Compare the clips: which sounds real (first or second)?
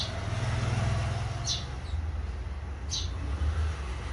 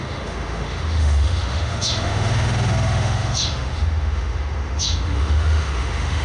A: first